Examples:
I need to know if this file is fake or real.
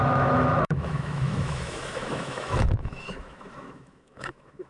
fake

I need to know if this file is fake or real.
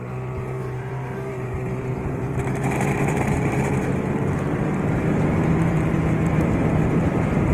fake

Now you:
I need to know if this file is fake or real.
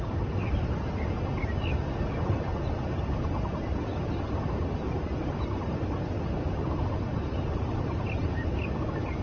real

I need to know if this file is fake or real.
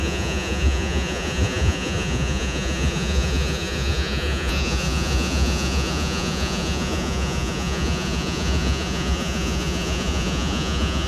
fake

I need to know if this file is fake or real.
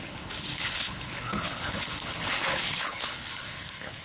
fake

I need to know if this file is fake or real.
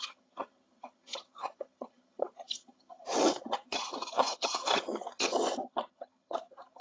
fake